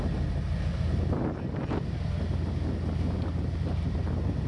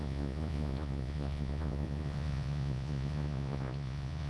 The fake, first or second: second